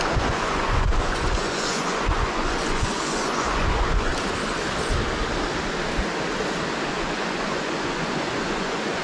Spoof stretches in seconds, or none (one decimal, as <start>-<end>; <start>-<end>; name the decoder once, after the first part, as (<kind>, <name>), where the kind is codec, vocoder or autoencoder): 0.0-4.1 (vocoder, Vocos); 6.9-9.0